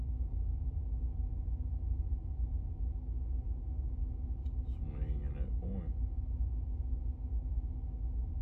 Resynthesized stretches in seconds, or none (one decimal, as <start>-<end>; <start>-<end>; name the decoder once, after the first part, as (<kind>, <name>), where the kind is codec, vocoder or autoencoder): none